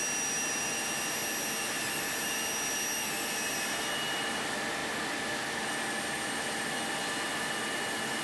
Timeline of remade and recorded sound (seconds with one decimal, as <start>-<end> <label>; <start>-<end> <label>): 0.0-8.2 recorded